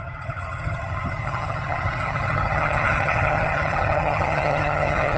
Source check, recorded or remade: remade